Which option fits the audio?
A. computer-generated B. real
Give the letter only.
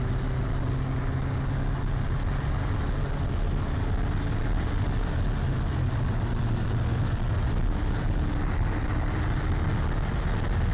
B